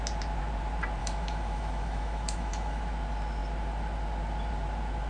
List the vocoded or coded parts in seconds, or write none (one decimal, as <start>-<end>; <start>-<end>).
1.0-2.8